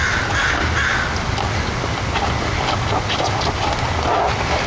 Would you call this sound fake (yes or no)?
no